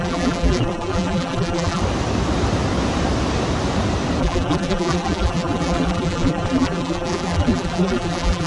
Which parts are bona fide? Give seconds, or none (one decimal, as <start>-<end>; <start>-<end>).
1.8-4.2